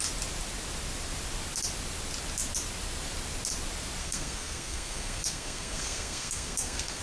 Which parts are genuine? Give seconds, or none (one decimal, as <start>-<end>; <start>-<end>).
0.0-4.0